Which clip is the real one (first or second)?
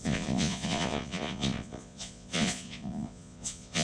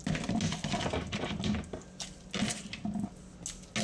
second